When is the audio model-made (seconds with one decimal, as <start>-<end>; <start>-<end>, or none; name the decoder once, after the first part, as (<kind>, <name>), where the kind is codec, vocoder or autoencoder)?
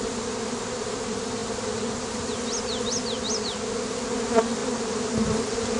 none